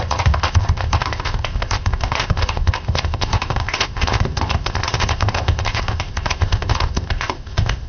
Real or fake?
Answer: fake